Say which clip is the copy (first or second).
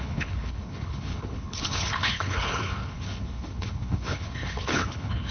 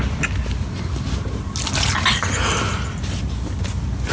first